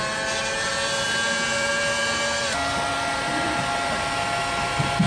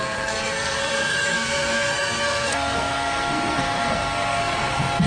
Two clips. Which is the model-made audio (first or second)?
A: second